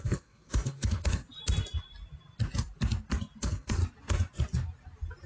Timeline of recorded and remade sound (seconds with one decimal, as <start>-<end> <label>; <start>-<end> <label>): 0.0-1.2 remade; 1.2-3.4 recorded; 3.4-3.8 remade; 3.8-5.3 recorded